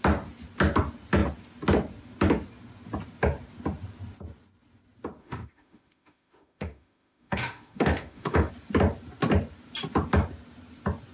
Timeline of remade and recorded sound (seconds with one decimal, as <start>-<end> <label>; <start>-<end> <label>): 0.0-5.2 recorded; 5.2-8.5 remade; 8.5-11.1 recorded